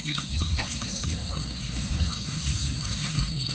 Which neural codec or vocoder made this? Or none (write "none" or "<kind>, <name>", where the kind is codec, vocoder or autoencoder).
codec, SNAC